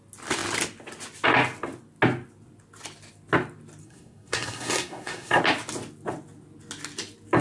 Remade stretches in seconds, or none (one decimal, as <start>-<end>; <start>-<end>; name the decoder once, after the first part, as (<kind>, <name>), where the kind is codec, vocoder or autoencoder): 3.8-5.4 (codec, SNAC)